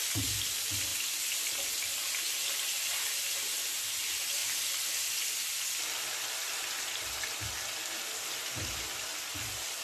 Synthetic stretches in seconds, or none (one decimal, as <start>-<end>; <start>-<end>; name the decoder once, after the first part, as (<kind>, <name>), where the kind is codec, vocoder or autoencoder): none